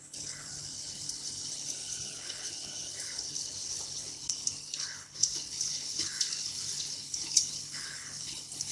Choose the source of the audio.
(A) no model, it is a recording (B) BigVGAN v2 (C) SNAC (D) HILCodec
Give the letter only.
D